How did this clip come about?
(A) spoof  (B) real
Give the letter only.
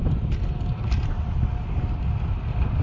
B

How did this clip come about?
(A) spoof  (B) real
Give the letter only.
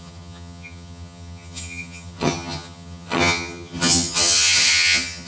A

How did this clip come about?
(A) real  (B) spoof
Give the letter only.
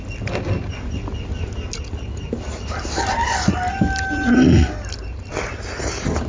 A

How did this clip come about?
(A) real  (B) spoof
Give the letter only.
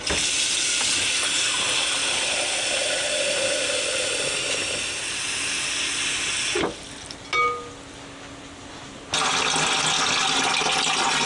A